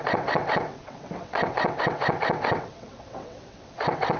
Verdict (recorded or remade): remade